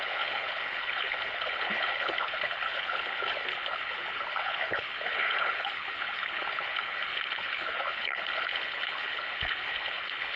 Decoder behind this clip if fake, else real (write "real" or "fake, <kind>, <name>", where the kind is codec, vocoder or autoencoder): fake, codec, HILCodec